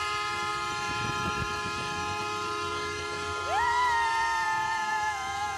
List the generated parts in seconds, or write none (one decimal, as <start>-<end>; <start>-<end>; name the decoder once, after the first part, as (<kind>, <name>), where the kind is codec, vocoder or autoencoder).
0.0-5.6 (vocoder, BigVGAN v2)